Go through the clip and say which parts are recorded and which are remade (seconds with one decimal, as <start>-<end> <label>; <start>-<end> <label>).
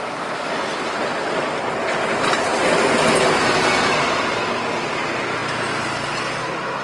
0.0-6.8 recorded